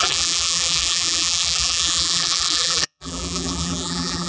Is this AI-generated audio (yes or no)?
yes